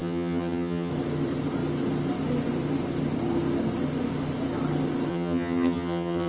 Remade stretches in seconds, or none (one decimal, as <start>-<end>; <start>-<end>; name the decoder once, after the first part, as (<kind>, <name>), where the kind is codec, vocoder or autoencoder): 0.0-0.9 (vocoder, HiFi-GAN); 5.1-6.3